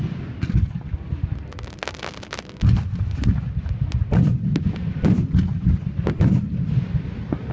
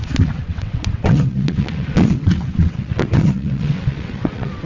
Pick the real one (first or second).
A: first